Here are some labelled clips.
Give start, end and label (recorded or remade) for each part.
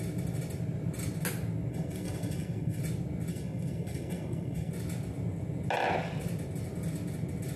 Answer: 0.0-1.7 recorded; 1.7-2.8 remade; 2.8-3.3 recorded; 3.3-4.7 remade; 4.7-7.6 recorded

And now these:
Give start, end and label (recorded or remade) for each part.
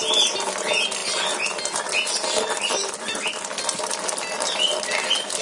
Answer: 0.0-5.4 recorded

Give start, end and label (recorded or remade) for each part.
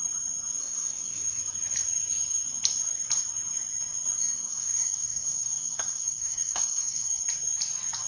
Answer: 0.0-0.6 recorded; 0.6-1.4 remade; 1.4-4.2 recorded; 4.2-7.2 remade; 7.2-8.1 recorded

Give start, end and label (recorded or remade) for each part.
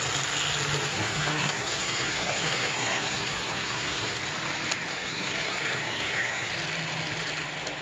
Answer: 0.0-0.9 recorded; 0.9-4.2 remade; 4.2-4.9 recorded; 4.9-6.5 remade; 6.5-7.8 recorded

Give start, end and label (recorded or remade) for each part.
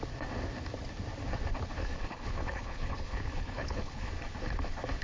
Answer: 0.0-1.8 recorded; 1.8-4.1 remade; 4.1-5.0 recorded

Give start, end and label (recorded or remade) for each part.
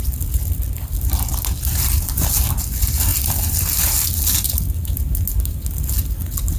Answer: 0.0-6.6 recorded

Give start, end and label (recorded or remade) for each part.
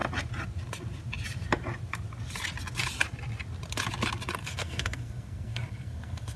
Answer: 0.0-4.4 recorded; 4.4-6.4 remade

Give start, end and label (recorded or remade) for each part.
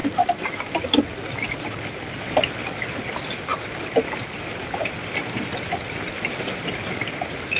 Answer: 0.0-2.1 recorded; 2.1-7.6 remade